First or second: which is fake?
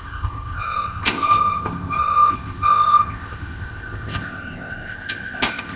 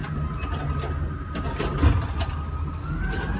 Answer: first